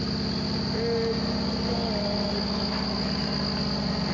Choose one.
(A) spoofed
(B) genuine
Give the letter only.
B